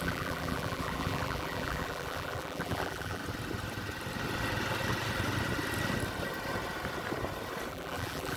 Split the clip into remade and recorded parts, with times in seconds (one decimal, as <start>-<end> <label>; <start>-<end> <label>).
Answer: 0.0-3.2 remade; 3.2-7.7 recorded; 7.7-8.4 remade